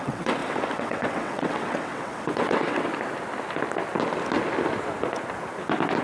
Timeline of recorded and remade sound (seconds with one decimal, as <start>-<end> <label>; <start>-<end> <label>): 0.0-2.9 remade; 2.9-6.0 recorded